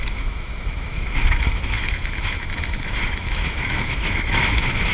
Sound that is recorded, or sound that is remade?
remade